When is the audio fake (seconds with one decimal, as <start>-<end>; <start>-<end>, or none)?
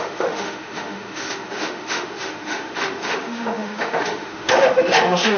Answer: 0.0-5.4